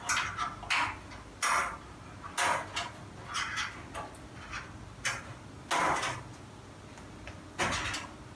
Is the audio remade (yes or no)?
no